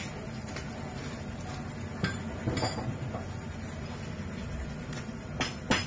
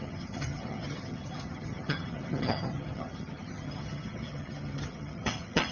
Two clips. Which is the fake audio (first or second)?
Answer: second